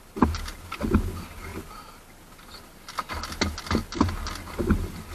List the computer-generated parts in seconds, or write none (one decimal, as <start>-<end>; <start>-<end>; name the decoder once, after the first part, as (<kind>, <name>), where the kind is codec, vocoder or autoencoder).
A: none